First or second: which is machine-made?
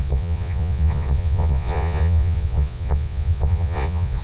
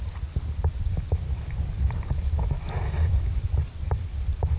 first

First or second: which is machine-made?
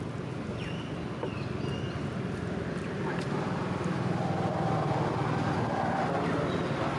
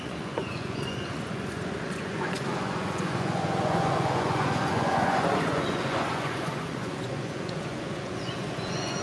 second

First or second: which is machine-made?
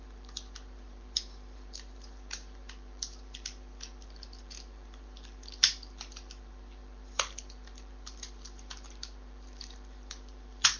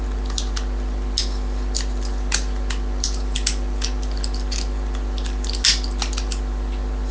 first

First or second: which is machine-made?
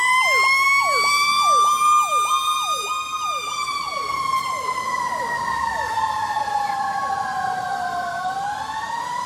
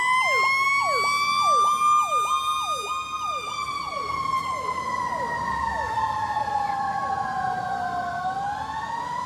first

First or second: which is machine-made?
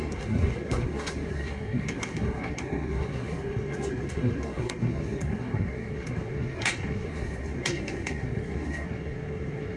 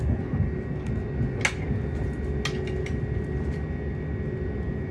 first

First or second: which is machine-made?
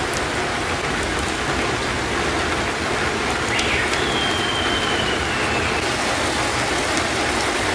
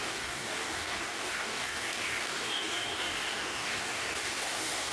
second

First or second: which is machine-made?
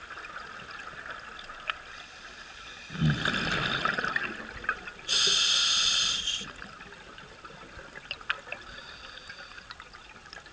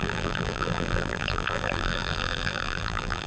second